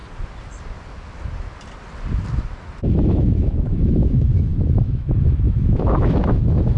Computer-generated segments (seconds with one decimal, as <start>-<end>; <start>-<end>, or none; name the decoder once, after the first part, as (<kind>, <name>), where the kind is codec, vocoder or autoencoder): 3.0-6.8 (autoencoder, DAC-VAE)